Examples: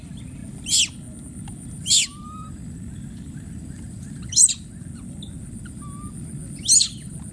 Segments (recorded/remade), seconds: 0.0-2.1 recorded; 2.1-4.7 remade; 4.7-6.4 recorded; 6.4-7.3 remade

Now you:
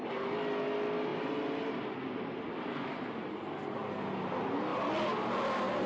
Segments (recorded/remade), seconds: 0.0-5.9 recorded

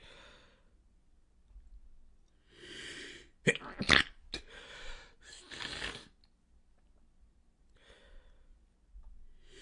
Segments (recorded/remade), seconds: 0.0-9.6 recorded

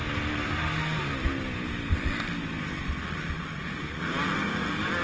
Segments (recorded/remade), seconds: 0.0-5.0 recorded

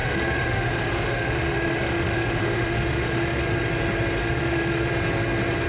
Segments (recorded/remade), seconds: 0.0-3.4 remade; 3.4-4.2 recorded; 4.2-4.9 remade; 4.9-5.7 recorded

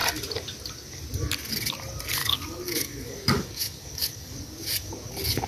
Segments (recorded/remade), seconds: 0.0-2.2 recorded; 2.2-4.9 remade; 4.9-5.5 recorded